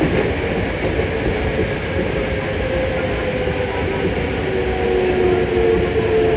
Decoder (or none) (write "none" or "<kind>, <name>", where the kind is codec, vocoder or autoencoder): none